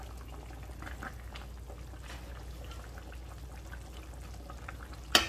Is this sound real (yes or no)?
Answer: yes